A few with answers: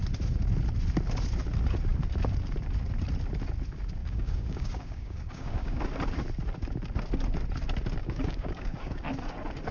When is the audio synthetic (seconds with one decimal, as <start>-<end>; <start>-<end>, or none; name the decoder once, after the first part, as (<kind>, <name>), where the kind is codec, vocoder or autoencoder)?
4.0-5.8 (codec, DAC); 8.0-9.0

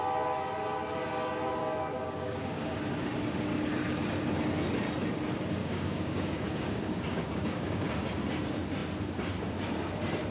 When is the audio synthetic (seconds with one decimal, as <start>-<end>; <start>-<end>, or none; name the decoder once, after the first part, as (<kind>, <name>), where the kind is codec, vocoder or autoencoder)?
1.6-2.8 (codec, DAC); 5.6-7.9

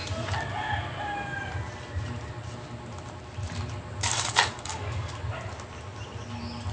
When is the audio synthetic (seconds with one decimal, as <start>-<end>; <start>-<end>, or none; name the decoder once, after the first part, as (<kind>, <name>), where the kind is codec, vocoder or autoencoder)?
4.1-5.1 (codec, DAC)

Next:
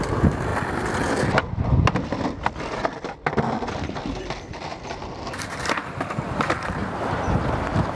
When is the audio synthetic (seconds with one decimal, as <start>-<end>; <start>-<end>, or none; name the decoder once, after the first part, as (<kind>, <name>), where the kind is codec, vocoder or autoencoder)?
none

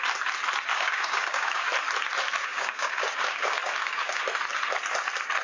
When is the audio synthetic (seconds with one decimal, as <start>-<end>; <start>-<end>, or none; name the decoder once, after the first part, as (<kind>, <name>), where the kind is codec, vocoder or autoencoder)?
0.7-1.7 (codec, DAC); 2.4-4.2

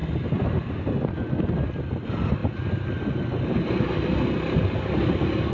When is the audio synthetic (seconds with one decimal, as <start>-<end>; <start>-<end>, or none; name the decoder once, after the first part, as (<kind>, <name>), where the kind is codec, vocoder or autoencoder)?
none

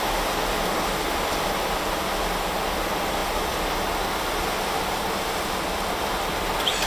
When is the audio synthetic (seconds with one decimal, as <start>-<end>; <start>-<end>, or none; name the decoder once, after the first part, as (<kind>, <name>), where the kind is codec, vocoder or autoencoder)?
none